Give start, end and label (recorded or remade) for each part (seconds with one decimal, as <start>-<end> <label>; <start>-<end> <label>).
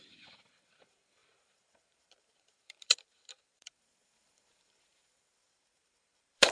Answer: 0.0-6.5 remade